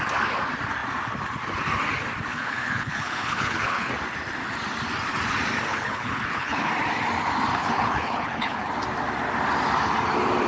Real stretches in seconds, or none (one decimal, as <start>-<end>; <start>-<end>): 0.0-2.3; 3.9-5.7; 6.7-7.6; 8.7-10.5